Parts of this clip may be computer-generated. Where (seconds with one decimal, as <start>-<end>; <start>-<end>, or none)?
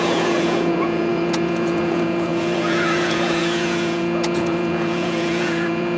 0.0-6.0